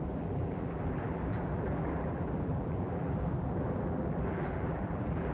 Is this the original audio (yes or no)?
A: no